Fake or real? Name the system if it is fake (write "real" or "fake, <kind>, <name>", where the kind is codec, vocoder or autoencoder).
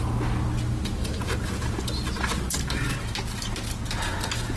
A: real